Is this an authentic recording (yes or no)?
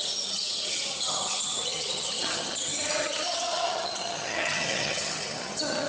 no